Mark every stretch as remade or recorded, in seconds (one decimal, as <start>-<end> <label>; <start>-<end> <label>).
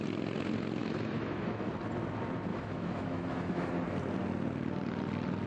0.0-0.8 recorded; 0.8-1.7 remade; 1.7-2.5 recorded; 2.5-3.7 remade; 3.7-5.5 recorded